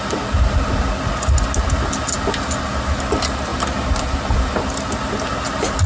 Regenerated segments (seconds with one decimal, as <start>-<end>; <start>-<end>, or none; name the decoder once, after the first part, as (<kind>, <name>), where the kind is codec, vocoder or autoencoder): none